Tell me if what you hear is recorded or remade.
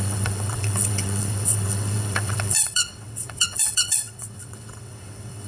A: remade